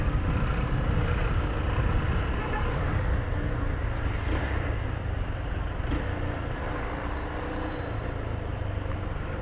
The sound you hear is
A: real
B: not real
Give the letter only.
A